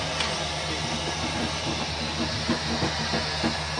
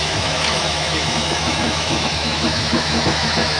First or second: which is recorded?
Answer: first